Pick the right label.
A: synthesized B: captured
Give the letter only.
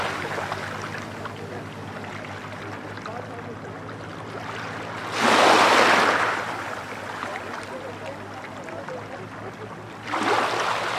B